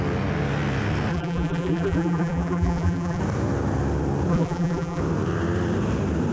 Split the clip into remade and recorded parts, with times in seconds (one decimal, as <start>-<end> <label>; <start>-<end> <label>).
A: 0.0-1.1 recorded; 1.1-3.2 remade; 3.2-4.3 recorded; 4.3-5.0 remade; 5.0-6.3 recorded